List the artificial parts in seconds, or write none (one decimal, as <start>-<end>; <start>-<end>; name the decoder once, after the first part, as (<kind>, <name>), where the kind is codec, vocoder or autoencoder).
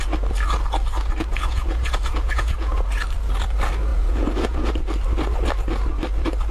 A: 1.3-2.8 (vocoder, Vocos); 3.9-4.7